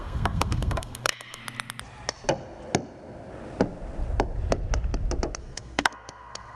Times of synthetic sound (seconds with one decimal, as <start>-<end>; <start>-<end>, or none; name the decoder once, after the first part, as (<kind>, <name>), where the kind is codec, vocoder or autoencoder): 0.0-1.4 (codec, SNAC); 5.4-6.6